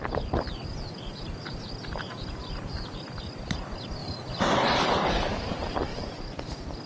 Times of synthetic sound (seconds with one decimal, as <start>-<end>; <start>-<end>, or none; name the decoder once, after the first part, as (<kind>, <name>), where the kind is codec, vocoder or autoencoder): 4.0-4.5 (vocoder, BigVGAN v2); 5.9-6.9